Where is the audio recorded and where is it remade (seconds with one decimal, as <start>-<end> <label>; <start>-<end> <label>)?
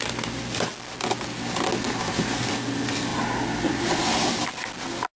0.0-5.2 recorded